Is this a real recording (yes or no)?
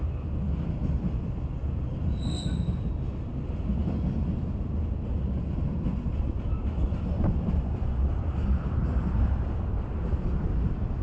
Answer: yes